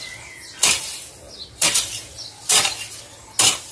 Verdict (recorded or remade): recorded